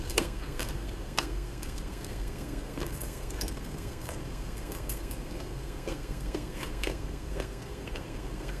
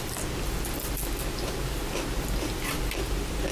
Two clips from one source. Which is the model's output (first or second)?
first